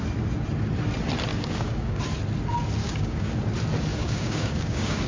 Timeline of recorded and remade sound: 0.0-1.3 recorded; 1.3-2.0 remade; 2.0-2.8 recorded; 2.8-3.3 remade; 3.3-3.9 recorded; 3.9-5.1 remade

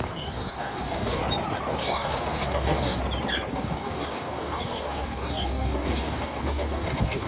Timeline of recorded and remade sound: 0.0-1.2 remade; 1.2-1.8 recorded; 1.8-3.0 remade; 3.0-3.5 recorded; 3.5-7.3 remade

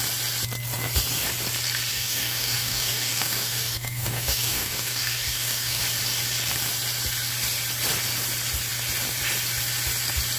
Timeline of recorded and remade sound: 0.0-1.9 recorded; 1.9-5.8 remade; 5.8-10.4 recorded

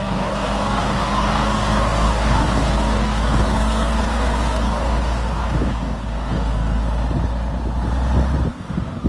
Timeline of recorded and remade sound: 0.0-6.8 remade; 6.8-8.5 recorded; 8.5-9.1 remade

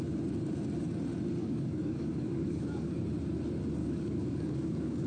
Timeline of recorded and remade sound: 0.0-1.4 recorded; 1.4-3.0 remade; 3.0-3.8 recorded; 3.8-5.1 remade

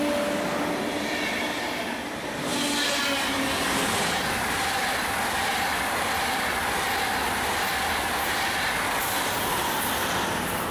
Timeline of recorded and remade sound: 0.0-10.7 recorded